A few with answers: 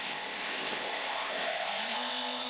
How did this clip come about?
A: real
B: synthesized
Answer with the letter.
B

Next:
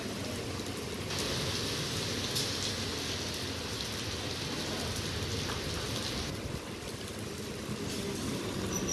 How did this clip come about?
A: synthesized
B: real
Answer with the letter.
B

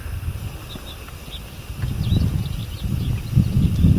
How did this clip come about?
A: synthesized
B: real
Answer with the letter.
B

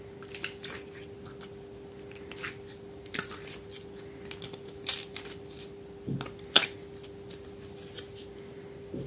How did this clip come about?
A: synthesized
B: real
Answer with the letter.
B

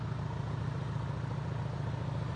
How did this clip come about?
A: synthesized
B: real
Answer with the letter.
B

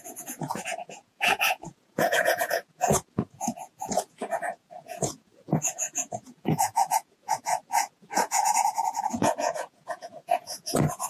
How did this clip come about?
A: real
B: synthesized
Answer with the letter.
B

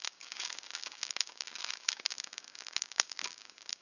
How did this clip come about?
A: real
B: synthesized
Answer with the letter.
B